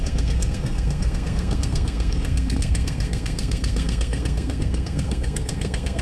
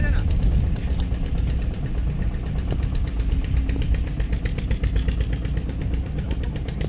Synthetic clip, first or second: first